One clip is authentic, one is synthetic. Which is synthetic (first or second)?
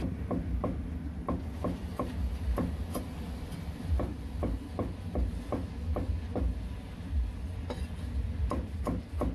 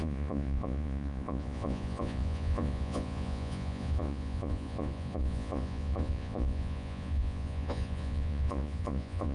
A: second